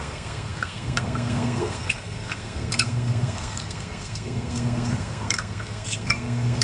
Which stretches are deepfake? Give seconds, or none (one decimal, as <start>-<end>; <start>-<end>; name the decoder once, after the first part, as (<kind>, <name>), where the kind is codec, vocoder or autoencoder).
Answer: 0.0-6.6 (codec, SNAC)